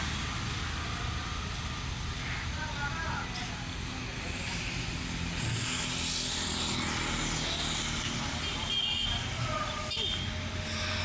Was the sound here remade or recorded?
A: recorded